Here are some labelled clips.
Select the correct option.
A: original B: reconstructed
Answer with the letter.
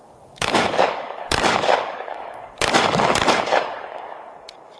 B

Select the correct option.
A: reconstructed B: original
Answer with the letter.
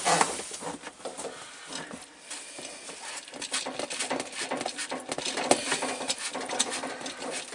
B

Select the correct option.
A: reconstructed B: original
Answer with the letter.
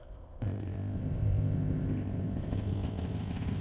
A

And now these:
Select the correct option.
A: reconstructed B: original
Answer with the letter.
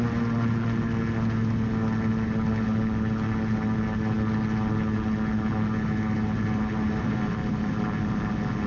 B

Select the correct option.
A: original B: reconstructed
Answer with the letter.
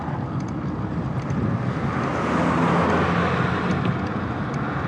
A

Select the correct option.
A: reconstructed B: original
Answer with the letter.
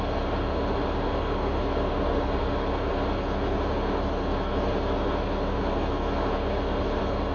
B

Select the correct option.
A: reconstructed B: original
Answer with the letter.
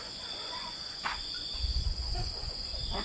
A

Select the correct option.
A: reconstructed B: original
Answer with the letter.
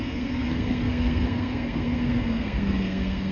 A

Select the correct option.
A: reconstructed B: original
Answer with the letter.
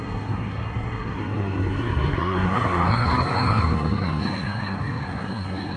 A